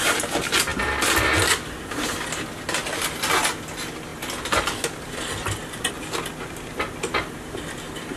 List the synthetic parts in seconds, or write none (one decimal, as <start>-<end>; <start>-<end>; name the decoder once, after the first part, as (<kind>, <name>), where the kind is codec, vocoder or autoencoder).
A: none